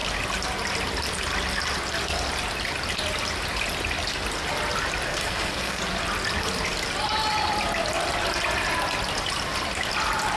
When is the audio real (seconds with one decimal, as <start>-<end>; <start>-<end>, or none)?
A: 0.0-5.1; 5.8-10.4

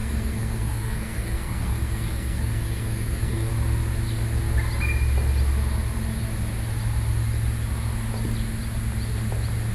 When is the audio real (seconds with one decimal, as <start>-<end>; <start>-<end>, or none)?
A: 3.5-9.7

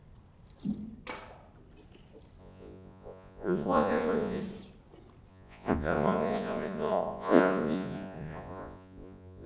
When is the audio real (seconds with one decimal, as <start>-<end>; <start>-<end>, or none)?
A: 0.0-2.4; 4.4-5.3

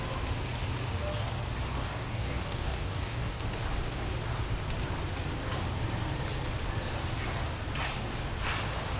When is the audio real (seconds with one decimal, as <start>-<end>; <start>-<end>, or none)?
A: 0.0-1.8; 3.4-9.0